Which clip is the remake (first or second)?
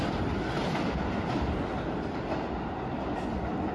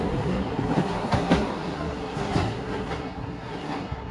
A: second